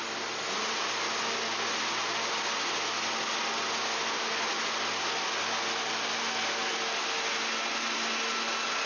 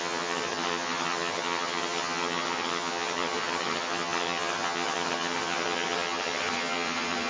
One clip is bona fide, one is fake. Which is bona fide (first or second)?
first